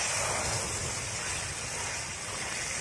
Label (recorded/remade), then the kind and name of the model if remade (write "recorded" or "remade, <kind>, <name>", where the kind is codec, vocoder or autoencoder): recorded